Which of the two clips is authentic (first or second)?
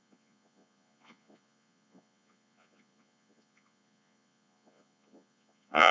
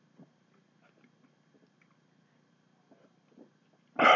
second